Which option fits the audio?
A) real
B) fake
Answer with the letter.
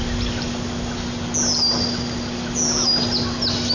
A